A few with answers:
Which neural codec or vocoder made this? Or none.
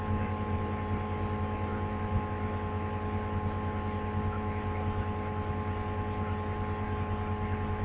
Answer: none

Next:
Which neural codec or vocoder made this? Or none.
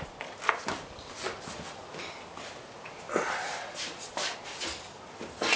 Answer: none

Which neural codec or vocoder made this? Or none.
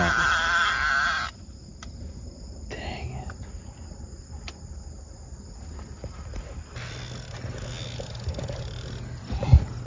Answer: none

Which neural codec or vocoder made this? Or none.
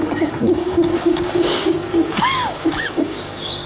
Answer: codec, DAC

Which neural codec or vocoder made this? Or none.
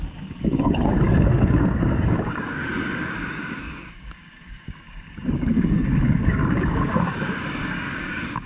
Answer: codec, DAC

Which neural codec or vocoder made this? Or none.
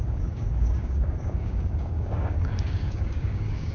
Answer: codec, DAC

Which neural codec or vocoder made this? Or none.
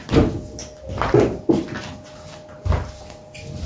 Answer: none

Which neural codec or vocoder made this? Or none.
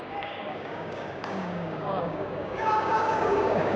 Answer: codec, DAC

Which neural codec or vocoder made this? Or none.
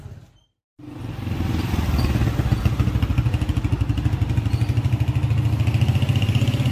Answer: none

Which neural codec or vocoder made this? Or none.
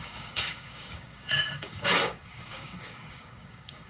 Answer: codec, DAC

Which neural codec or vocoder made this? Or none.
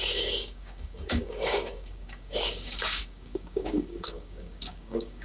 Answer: codec, DAC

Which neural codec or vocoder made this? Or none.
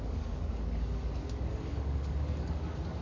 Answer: codec, DAC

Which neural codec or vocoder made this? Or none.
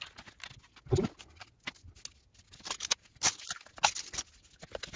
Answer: none